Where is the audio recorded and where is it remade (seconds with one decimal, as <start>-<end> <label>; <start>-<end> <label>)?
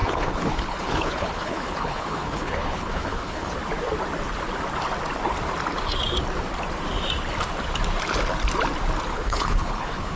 0.0-3.5 remade; 3.5-9.1 recorded; 9.1-10.2 remade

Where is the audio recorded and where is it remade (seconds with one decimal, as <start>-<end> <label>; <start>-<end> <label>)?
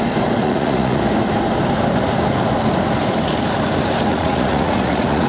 0.0-0.4 recorded; 0.4-1.0 remade; 1.0-4.1 recorded; 4.1-5.3 remade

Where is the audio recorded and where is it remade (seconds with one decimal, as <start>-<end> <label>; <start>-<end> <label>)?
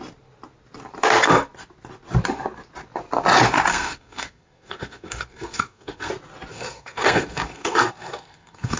0.0-3.7 recorded; 3.7-6.1 remade; 6.1-6.5 recorded; 6.5-8.8 remade